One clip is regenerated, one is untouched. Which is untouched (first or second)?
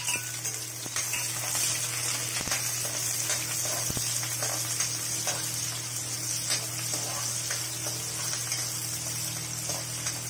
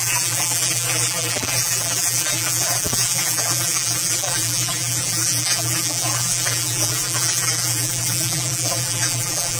first